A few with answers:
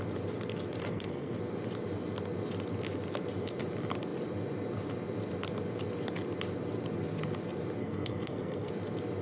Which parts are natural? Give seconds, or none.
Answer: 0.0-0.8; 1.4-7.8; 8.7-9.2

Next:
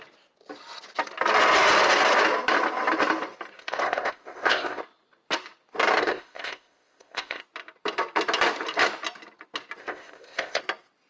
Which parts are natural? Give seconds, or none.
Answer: 0.0-3.6; 4.8-6.0; 7.4-9.8; 10.6-11.1

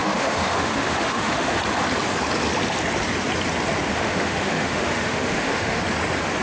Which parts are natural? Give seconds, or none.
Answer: 1.6-3.9; 5.8-6.4

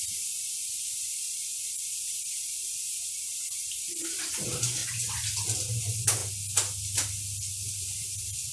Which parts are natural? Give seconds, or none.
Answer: 4.8-5.8; 6.2-7.5

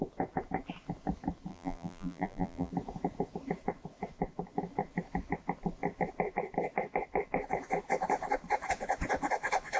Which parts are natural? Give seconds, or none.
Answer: 0.0-1.5; 2.7-9.8

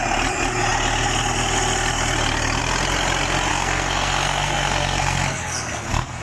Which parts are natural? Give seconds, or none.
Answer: 0.0-3.5

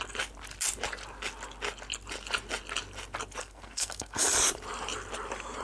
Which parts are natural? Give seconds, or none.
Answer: 0.0-3.4; 4.2-5.6